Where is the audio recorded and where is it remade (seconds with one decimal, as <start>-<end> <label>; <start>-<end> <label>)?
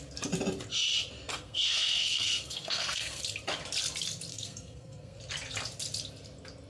0.0-1.3 recorded; 1.3-3.2 remade; 3.2-4.3 recorded; 4.3-5.2 remade; 5.2-6.7 recorded